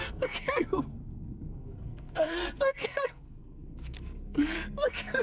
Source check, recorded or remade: remade